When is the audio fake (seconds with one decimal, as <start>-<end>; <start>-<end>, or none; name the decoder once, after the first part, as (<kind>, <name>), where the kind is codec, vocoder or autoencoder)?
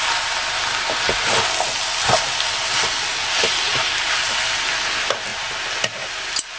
none